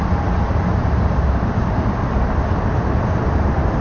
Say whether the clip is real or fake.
real